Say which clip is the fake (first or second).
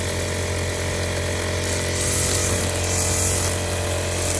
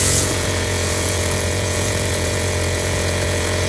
second